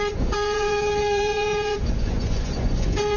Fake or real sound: fake